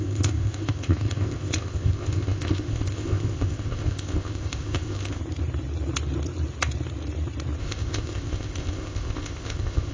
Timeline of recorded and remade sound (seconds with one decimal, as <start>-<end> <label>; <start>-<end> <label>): 0.0-5.2 remade; 5.2-7.6 recorded; 7.6-9.9 remade